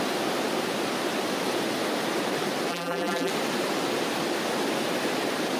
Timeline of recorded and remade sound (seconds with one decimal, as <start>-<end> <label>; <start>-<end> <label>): 0.0-2.7 recorded; 2.7-3.3 remade; 3.3-5.6 recorded

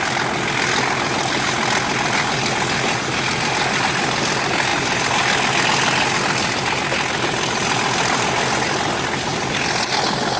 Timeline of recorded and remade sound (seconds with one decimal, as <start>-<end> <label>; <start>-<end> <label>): 0.0-10.4 recorded

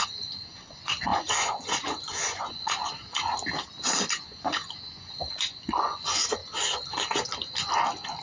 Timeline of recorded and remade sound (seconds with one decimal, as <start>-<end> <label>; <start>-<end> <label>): 0.0-2.9 remade; 2.9-4.1 recorded; 4.1-6.4 remade; 6.4-8.2 recorded

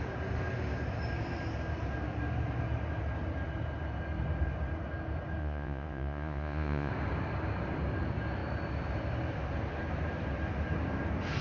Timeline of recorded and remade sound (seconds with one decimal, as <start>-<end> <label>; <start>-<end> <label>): 0.0-5.4 recorded; 5.4-6.9 remade; 6.9-11.4 recorded

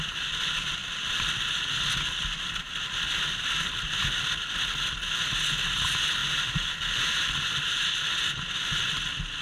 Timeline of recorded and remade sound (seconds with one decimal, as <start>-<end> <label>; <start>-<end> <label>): 0.0-9.4 recorded

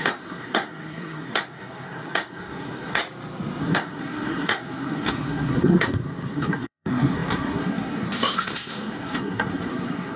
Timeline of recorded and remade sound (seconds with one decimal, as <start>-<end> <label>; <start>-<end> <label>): 0.0-3.0 remade; 3.0-3.6 recorded; 3.6-10.2 remade

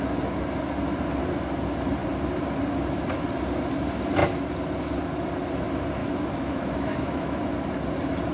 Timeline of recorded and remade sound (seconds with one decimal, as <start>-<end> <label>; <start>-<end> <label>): 0.0-6.0 recorded; 6.0-7.4 remade; 7.4-8.3 recorded

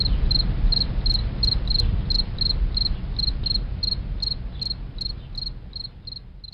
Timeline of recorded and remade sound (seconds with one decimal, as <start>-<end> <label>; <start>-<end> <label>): 0.0-6.5 recorded